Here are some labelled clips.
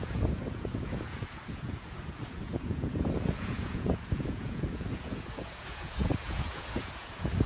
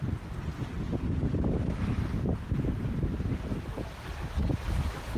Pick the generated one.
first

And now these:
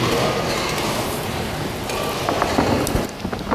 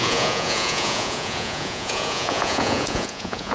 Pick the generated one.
second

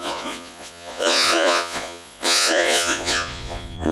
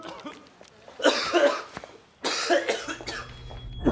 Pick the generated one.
first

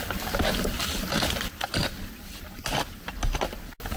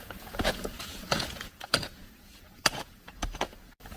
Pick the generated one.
second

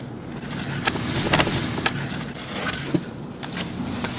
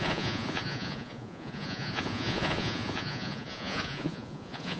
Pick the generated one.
second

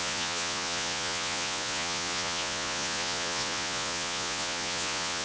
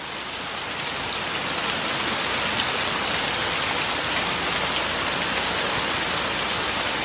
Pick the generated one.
first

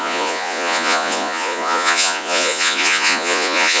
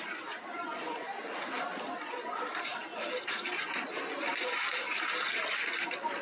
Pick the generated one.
first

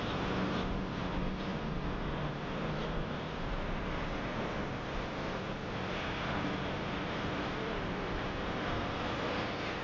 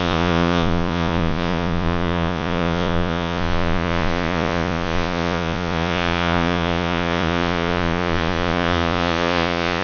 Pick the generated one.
second